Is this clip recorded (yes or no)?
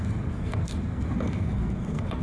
no